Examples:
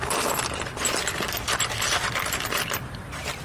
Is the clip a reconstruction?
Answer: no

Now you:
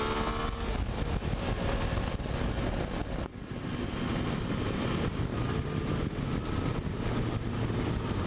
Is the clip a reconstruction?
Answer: no